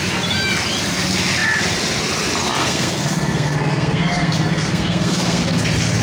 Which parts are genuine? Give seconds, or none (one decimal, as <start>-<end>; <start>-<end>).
0.0-2.6; 5.6-6.0